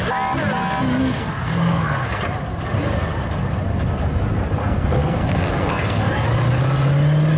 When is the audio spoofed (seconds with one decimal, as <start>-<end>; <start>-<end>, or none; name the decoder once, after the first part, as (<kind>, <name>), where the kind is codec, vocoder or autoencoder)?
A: 1.0-2.2 (codec, SNAC); 4.6-6.0

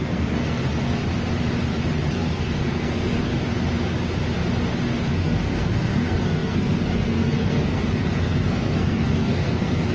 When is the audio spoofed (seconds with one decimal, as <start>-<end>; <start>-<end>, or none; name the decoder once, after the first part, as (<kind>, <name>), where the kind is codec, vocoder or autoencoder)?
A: 0.0-1.0 (codec, SNAC); 2.1-3.3; 5.1-9.9

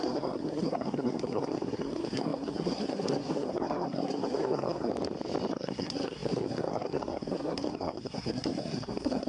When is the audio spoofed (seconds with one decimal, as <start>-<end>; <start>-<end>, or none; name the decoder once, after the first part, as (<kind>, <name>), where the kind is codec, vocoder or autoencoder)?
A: 0.0-4.9 (codec, SNAC); 5.5-9.3

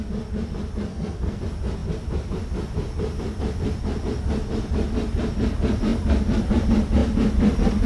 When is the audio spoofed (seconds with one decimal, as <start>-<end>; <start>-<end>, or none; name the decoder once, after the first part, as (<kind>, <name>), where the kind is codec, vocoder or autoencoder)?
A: 0.9-1.4 (codec, SNAC)

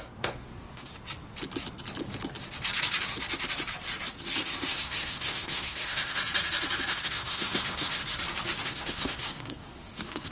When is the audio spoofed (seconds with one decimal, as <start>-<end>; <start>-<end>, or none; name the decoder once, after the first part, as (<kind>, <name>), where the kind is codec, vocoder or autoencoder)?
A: 0.0-0.9 (codec, SNAC); 4.7-6.2; 6.9-8.0; 8.6-10.3

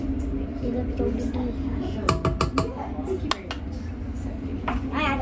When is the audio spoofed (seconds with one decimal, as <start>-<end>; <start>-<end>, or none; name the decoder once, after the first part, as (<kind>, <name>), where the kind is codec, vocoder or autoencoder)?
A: none

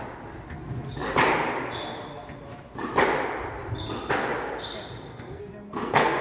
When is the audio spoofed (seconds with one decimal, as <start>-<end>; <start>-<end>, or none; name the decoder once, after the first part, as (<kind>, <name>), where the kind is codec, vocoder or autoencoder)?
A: 5.1-6.2 (codec, SNAC)